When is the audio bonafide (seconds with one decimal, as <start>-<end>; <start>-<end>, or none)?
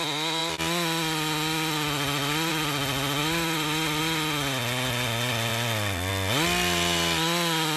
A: 0.0-3.2; 4.0-5.5; 6.1-7.8